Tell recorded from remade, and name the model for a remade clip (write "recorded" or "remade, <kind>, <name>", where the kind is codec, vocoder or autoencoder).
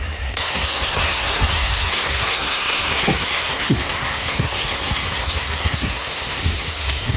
remade, codec, SNAC